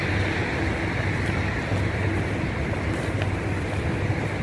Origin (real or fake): real